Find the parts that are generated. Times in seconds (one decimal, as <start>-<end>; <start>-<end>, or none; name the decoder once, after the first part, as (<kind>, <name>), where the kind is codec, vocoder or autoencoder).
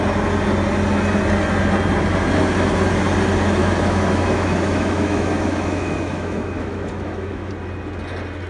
3.6-7.5 (autoencoder, DAC-VAE)